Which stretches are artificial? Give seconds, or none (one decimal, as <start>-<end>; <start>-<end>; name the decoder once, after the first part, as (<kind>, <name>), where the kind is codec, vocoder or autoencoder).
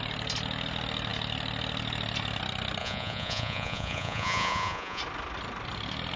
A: 2.8-5.0 (vocoder, Vocos)